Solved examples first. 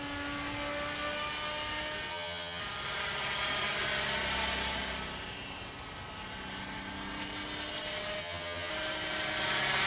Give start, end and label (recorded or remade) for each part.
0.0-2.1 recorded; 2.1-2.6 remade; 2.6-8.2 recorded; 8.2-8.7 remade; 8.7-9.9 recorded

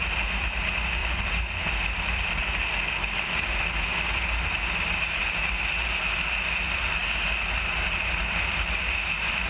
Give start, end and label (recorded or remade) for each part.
0.0-9.5 recorded

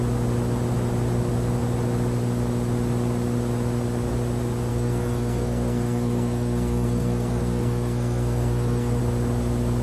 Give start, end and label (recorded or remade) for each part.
0.0-4.7 recorded; 4.7-9.0 remade; 9.0-9.8 recorded

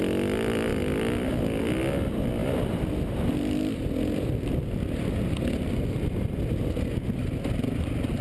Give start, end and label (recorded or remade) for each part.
0.0-8.2 recorded

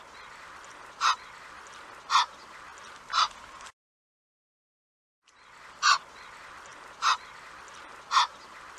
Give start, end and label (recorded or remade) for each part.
0.0-8.8 recorded

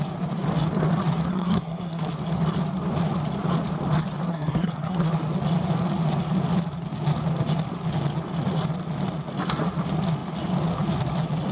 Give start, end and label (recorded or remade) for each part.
0.0-1.3 recorded; 1.3-2.0 remade; 2.0-4.3 recorded; 4.3-5.1 remade; 5.1-11.5 recorded